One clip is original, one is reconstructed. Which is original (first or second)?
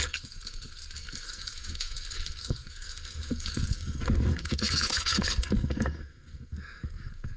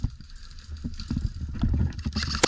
second